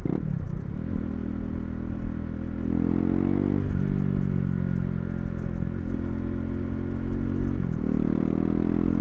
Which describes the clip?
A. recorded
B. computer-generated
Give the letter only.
A